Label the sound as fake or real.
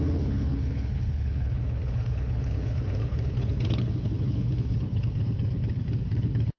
fake